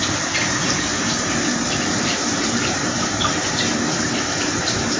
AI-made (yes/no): yes